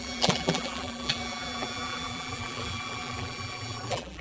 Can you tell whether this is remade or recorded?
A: remade